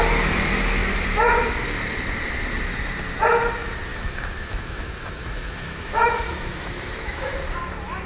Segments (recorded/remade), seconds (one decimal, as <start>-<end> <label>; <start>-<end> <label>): 0.0-3.9 recorded; 3.9-7.3 remade; 7.3-8.1 recorded